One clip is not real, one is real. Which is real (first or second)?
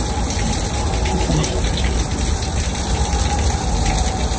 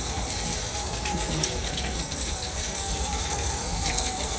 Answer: first